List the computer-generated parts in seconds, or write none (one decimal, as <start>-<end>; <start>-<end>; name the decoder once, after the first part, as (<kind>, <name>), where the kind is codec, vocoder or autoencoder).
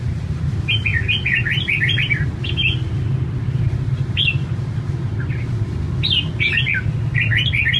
none